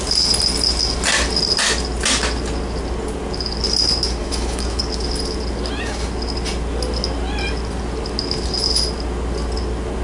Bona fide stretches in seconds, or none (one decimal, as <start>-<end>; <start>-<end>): 0.0-4.2; 4.8-10.0